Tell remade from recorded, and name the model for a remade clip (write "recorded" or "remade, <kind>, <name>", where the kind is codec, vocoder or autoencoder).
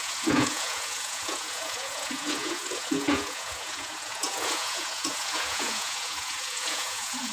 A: remade, vocoder, Vocos